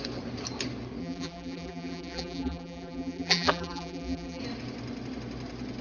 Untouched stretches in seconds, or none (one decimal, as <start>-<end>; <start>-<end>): 0.0-1.0; 4.4-5.8